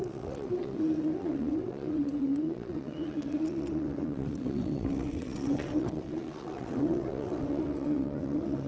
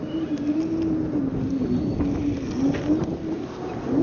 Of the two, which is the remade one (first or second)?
first